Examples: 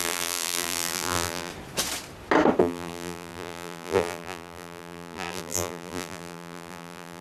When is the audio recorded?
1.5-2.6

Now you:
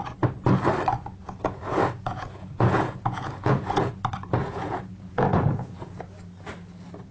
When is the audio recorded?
0.0-1.2; 4.0-4.4; 6.0-7.1